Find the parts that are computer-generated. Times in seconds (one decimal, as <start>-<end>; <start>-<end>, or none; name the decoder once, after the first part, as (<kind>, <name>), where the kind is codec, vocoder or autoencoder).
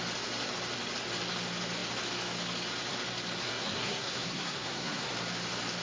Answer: 3.4-5.1 (codec, SNAC)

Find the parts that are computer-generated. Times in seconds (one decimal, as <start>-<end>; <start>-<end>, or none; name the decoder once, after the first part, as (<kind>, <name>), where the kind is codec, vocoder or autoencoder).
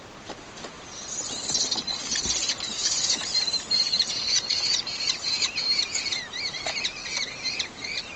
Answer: 2.4-5.7 (vocoder, BigVGAN v2); 7.0-8.2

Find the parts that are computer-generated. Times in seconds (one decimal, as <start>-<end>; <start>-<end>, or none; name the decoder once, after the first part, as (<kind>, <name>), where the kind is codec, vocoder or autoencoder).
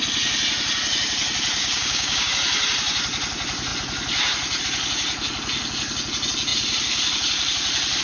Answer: 1.6-2.3 (codec, DAC)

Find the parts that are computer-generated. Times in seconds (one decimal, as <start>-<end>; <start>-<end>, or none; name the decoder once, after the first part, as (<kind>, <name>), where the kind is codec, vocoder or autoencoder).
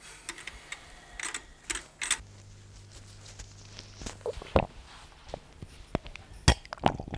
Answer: none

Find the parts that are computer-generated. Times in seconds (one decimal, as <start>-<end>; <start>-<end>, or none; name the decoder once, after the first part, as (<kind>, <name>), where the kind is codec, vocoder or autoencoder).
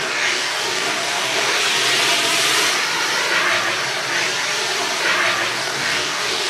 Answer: 0.0-1.6 (codec, DAC); 5.5-6.5